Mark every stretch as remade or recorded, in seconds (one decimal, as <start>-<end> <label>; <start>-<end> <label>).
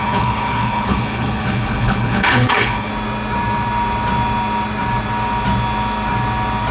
0.0-2.9 remade; 2.9-6.7 recorded